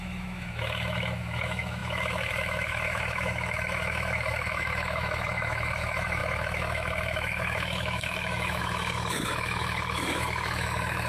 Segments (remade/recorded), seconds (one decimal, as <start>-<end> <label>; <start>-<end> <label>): 0.0-11.1 remade